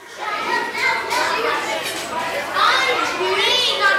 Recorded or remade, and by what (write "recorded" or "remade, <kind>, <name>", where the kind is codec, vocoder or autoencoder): recorded